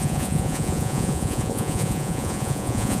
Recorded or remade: remade